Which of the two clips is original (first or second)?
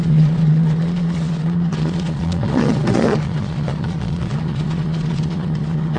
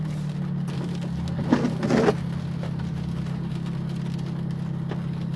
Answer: second